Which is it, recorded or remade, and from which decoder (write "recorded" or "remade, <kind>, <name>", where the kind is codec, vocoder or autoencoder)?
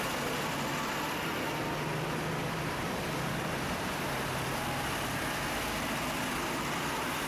recorded